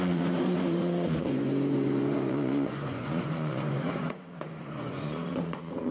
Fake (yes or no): yes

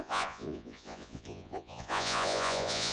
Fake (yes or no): yes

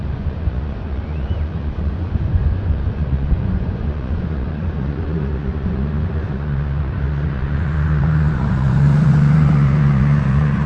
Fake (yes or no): yes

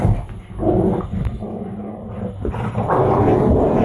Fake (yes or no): no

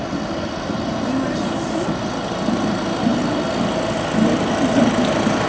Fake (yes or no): no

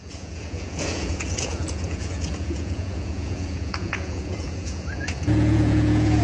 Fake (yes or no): yes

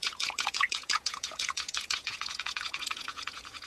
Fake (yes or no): yes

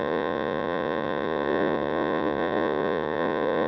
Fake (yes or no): yes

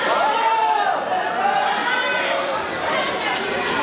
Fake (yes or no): no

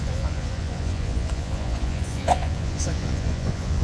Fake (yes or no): yes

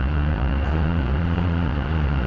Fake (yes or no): yes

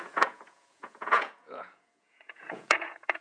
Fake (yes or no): yes